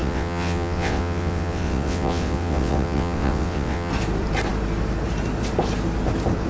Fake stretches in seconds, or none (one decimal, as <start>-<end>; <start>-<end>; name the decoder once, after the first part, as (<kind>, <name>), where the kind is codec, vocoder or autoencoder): 0.0-3.9 (vocoder, WaveNeXt)